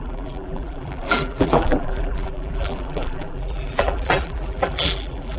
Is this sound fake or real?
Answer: fake